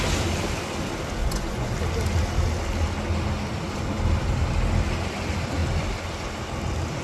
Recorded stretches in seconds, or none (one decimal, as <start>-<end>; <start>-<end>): 0.0-1.2; 1.7-7.0

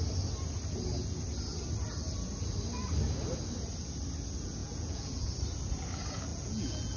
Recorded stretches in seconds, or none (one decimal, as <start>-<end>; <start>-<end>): 0.0-4.6; 5.3-6.3

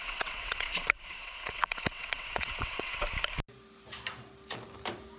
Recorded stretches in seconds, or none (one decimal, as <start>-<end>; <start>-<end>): 3.0-5.2

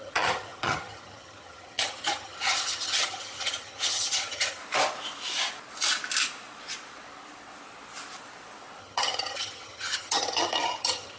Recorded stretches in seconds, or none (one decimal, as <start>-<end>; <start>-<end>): 4.6-8.8

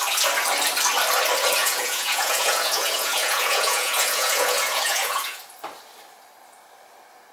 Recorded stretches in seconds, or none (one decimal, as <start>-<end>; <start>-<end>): 0.0-1.6; 5.4-7.3

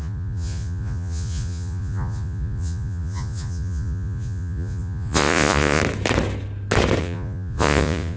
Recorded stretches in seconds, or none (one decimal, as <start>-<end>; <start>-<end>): 5.8-7.0